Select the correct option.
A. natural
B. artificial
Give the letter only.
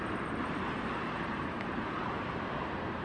B